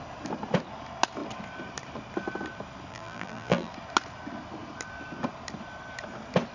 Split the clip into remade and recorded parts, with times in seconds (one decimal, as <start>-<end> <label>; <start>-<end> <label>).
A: 0.0-2.9 recorded; 2.9-3.7 remade; 3.7-6.5 recorded